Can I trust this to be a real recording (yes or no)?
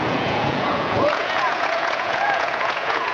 no